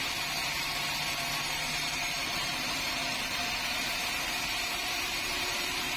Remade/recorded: remade